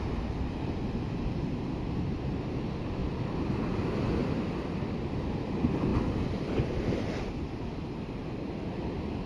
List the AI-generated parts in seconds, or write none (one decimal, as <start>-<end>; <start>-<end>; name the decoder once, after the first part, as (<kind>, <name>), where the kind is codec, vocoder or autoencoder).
3.0-3.6 (vocoder, BigVGAN v2); 4.2-5.3